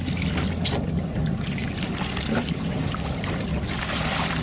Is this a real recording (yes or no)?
yes